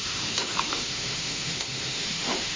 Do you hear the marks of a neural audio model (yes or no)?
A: yes